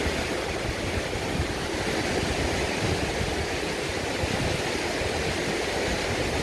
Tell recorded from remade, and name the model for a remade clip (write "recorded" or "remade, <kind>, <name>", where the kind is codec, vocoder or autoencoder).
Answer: recorded